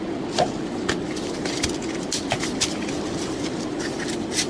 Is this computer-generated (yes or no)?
no